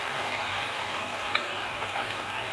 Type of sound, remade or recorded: remade